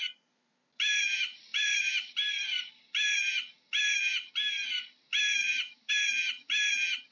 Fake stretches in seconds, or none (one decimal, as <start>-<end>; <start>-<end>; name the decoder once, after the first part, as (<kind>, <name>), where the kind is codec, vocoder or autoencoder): 1.5-2.7 (vocoder, BigVGAN v2); 5.4-5.9